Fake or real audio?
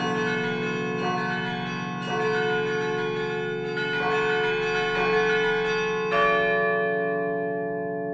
real